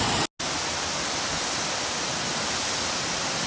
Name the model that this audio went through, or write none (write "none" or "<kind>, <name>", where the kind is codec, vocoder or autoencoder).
none